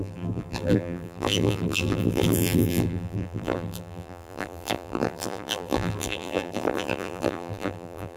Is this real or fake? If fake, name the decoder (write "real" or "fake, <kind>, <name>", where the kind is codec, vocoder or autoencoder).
fake, vocoder, BigVGAN v2